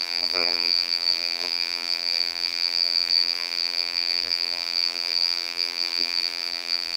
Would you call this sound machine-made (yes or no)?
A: yes